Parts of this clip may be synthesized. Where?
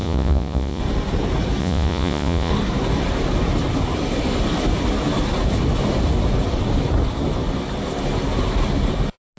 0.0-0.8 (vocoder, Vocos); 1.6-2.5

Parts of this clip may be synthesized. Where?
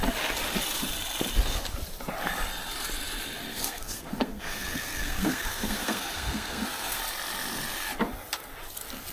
3.5-7.0 (codec, SNAC)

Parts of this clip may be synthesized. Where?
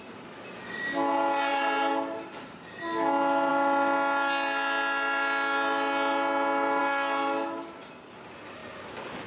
1.5-2.6 (vocoder, BigVGAN v2)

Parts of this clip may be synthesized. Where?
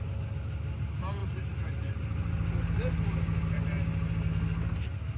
none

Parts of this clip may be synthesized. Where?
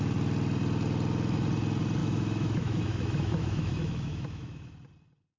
2.0-4.7 (autoencoder, DAC-VAE)